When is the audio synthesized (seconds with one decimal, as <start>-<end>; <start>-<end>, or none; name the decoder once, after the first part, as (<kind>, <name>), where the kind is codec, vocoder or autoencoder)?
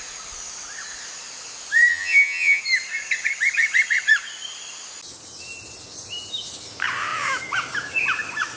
1.9-2.6 (vocoder, HiFi-GAN)